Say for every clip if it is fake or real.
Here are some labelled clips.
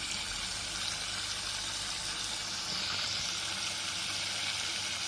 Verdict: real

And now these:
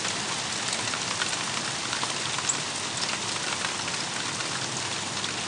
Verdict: real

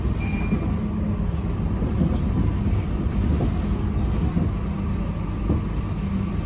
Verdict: real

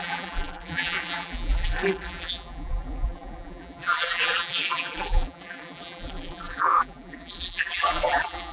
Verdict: fake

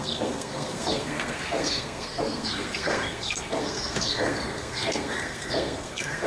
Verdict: fake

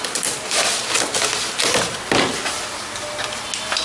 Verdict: real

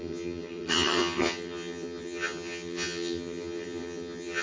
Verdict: fake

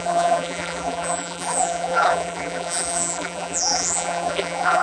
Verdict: fake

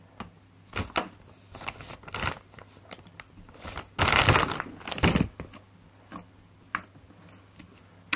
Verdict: real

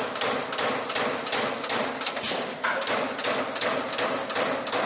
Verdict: real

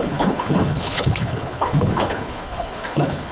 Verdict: fake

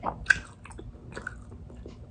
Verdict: real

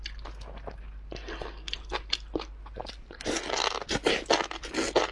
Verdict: real